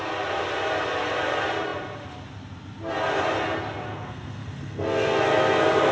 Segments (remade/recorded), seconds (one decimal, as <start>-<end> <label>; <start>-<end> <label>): 0.0-3.9 recorded; 3.9-5.9 remade